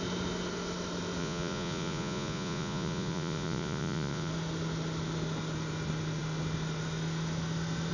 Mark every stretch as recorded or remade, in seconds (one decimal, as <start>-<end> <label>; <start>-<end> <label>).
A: 0.0-1.2 recorded; 1.2-4.3 remade; 4.3-7.9 recorded